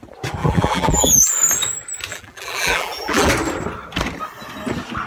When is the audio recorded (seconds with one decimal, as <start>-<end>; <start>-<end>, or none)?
0.0-0.4; 1.3-2.1; 3.3-5.1